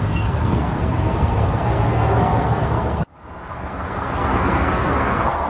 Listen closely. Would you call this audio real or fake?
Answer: fake